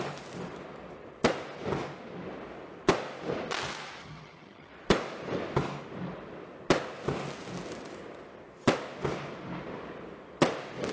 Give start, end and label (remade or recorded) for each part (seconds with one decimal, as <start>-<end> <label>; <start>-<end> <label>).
0.0-4.0 recorded; 4.0-4.7 remade; 4.7-10.9 recorded